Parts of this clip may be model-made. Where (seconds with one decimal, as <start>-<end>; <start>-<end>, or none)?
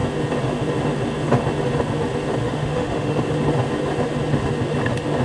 2.4-3.3